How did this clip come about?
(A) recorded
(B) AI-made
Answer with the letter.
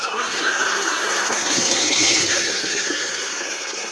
B